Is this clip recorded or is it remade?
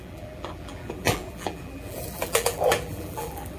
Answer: remade